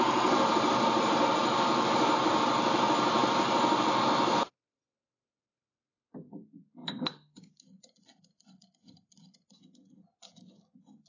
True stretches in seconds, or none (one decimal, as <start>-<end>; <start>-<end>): 0.0-6.8; 7.6-11.1